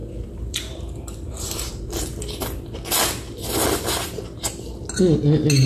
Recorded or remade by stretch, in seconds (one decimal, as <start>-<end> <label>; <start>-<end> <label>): 0.0-1.8 remade; 1.8-5.7 recorded